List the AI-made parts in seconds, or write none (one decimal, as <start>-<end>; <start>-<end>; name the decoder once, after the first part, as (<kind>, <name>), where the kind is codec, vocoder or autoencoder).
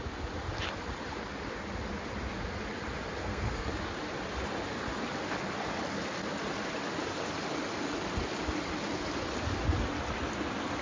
3.2-3.7 (codec, SNAC)